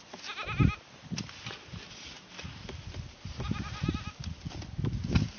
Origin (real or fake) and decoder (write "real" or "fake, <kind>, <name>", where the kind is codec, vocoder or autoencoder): real